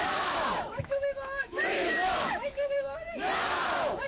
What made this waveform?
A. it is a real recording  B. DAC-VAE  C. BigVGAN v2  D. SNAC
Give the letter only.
B